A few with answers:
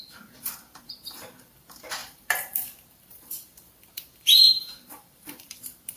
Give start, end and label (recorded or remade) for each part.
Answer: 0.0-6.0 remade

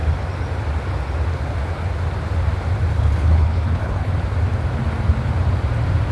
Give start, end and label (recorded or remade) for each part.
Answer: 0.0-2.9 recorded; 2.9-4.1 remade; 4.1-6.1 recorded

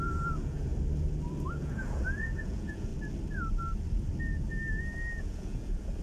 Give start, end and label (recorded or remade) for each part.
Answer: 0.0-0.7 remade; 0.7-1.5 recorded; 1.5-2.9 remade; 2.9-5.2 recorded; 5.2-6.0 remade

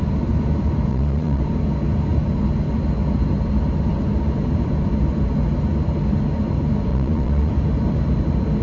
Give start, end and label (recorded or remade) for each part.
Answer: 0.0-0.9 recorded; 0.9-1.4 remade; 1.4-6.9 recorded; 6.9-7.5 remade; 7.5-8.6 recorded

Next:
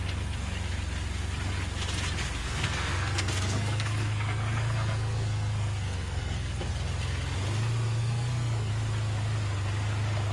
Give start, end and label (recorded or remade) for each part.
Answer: 0.0-2.4 recorded; 2.4-6.7 remade; 6.7-8.0 recorded; 8.0-8.7 remade; 8.7-10.3 recorded

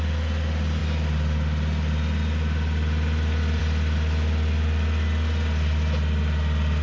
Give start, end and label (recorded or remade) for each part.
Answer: 0.0-6.8 recorded

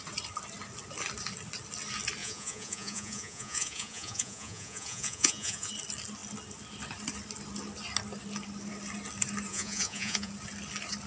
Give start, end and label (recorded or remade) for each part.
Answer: 0.0-2.2 recorded; 2.2-5.7 remade; 5.7-9.5 recorded; 9.5-10.3 remade; 10.3-11.1 recorded